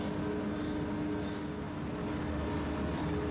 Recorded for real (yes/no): yes